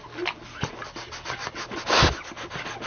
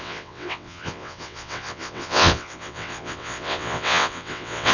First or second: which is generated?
second